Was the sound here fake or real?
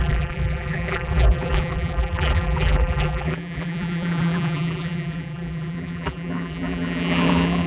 fake